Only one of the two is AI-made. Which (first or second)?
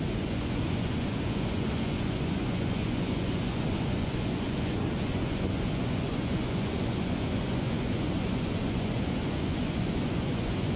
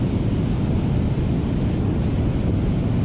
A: first